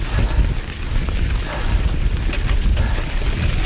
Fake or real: real